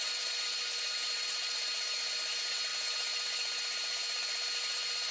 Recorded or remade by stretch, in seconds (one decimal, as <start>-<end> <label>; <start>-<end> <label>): 0.0-5.1 recorded